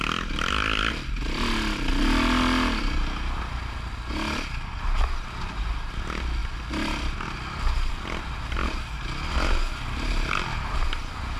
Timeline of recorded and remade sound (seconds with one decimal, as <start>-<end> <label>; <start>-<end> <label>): 0.0-11.4 recorded